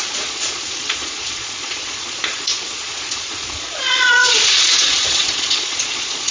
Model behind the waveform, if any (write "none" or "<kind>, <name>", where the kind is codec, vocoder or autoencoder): vocoder, Vocos